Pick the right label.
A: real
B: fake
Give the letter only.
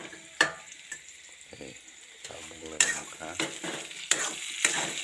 B